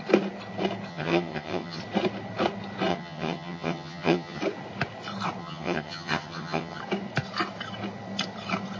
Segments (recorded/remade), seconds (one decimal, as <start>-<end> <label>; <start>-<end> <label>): 0.0-0.9 recorded; 0.9-1.8 remade; 1.8-2.9 recorded; 2.9-4.4 remade; 4.4-5.4 recorded; 5.4-6.8 remade; 6.8-8.8 recorded